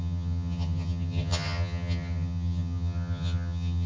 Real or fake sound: fake